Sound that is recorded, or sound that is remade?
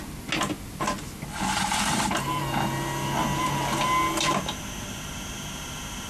recorded